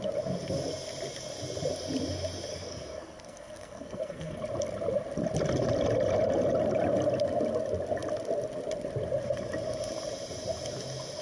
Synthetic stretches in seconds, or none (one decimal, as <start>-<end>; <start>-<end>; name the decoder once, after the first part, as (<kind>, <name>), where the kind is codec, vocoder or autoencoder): 2.5-4.4 (codec, SNAC)